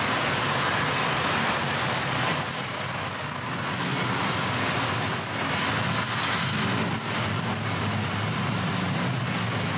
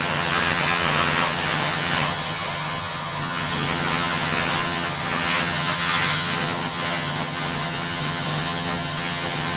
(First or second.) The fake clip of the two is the second